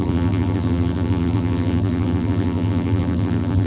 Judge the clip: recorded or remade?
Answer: remade